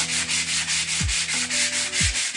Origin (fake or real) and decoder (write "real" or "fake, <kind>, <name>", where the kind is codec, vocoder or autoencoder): real